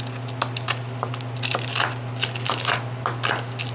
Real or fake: real